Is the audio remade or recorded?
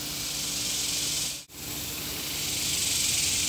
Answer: recorded